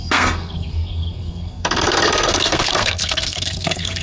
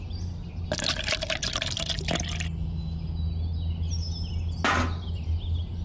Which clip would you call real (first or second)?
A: second